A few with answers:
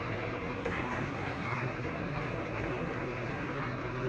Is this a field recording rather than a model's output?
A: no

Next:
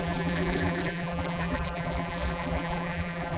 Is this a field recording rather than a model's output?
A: no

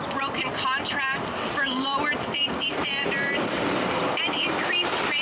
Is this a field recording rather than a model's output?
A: no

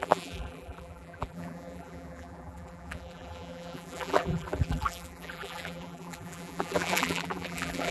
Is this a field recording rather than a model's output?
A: no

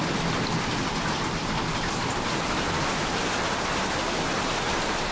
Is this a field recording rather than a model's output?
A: yes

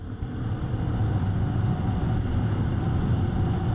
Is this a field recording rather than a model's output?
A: yes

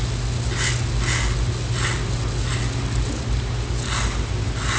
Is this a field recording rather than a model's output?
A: yes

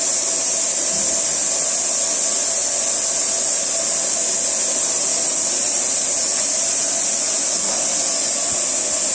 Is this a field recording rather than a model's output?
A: yes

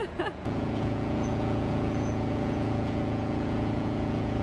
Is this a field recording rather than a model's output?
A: no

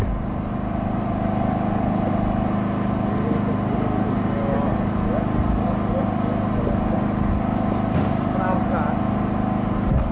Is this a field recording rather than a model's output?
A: yes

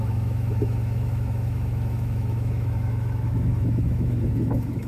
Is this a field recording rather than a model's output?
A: no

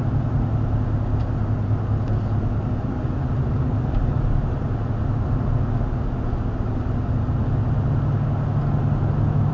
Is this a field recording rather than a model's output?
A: yes